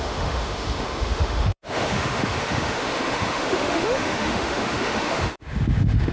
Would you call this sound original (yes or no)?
no